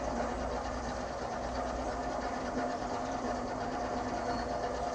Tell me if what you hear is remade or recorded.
recorded